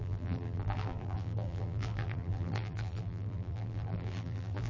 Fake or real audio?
fake